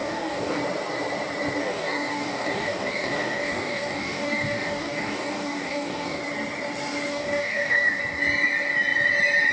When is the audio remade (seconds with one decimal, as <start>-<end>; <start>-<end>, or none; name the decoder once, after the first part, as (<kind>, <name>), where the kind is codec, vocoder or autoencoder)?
0.0-0.6 (codec, DAC); 1.6-6.2; 7.1-8.0